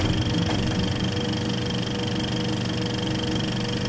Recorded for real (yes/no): yes